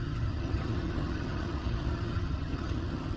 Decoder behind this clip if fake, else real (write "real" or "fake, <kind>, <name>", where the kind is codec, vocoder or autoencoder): fake, vocoder, HiFi-GAN